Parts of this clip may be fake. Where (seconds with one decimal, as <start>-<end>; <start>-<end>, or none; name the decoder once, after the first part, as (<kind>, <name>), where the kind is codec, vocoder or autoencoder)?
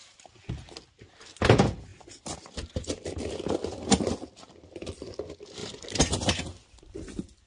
5.6-7.5 (vocoder, BigVGAN v2)